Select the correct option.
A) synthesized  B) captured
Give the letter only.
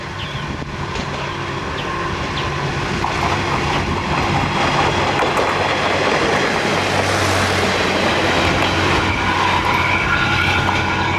B